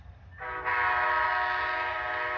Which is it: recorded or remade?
recorded